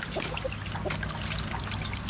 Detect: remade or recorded recorded